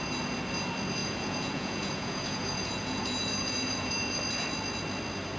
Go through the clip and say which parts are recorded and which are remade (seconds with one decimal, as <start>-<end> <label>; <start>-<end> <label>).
0.0-1.0 recorded; 1.0-4.2 remade; 4.2-5.4 recorded